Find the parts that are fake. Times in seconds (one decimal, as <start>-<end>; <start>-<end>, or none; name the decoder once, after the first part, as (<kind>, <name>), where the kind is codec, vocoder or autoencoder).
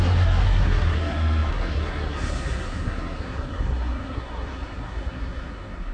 0.0-5.9 (codec, SNAC)